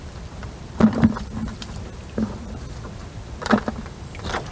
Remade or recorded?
remade